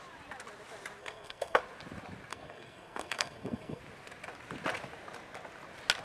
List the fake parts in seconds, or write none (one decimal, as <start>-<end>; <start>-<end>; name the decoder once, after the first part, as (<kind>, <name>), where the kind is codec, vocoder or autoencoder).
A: 1.0-1.6 (codec, SNAC); 2.3-3.8